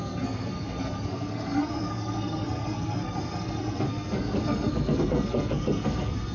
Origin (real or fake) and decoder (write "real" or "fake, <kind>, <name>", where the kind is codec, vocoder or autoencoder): fake, codec, SNAC